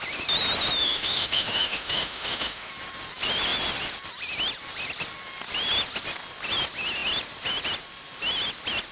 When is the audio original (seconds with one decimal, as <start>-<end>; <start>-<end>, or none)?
0.0-0.8; 2.7-8.9

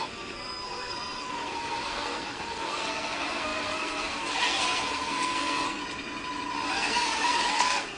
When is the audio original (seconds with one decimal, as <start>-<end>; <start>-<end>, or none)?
5.8-6.7

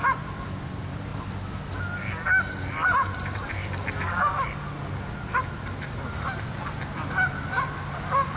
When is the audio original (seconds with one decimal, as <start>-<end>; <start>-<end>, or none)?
1.1-2.6; 4.2-5.3

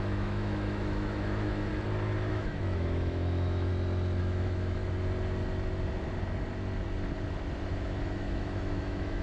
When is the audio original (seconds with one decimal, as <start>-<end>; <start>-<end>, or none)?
1.7-2.3; 3.7-4.2; 4.8-7.7